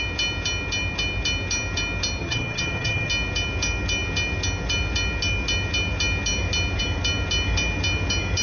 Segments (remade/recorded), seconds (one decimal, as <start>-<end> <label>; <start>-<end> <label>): 0.0-2.2 recorded; 2.2-3.1 remade; 3.1-8.4 recorded